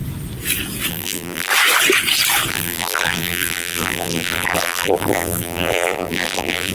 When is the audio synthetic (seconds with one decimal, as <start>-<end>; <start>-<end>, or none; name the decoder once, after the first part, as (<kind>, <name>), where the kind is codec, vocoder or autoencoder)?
0.9-1.5 (vocoder, BigVGAN v2); 2.5-6.7